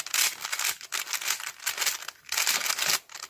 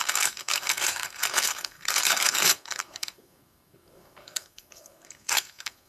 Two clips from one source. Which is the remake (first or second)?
second